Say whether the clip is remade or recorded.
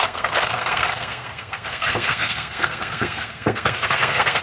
remade